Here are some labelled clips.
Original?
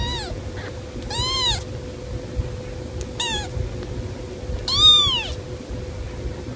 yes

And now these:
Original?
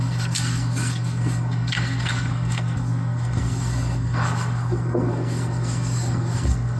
no